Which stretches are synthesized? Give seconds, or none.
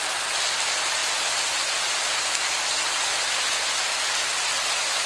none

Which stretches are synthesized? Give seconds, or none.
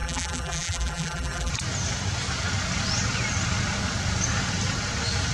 0.0-1.5 (vocoder, BigVGAN v2)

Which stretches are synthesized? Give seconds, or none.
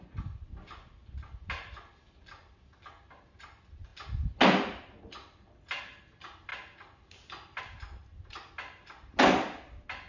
none